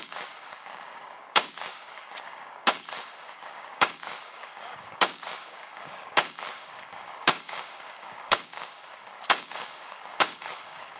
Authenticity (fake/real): fake